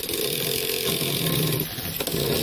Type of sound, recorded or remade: recorded